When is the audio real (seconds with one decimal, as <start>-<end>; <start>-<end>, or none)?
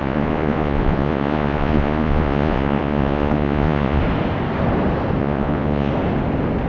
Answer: 4.0-5.2; 5.9-6.7